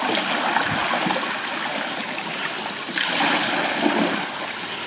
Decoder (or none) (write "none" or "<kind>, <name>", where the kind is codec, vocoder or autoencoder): none